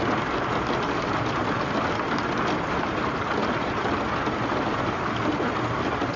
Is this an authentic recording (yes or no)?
yes